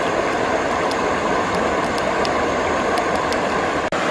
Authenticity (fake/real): real